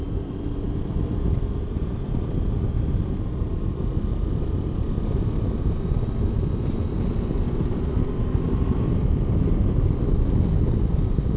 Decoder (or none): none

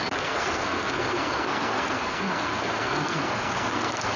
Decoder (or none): codec, SNAC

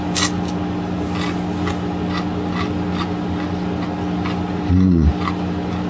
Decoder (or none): none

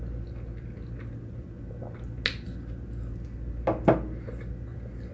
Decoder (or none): none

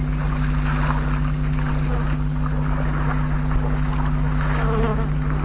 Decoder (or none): none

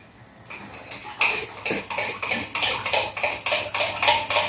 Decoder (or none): none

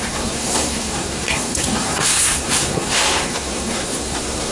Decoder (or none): codec, SNAC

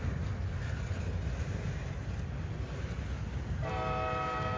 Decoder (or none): none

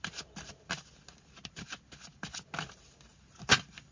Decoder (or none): none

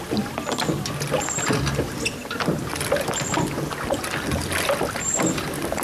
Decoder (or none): none